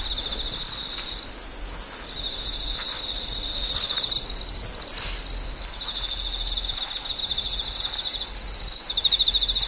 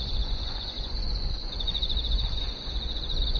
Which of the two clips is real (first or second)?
first